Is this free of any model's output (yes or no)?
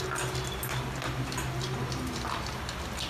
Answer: yes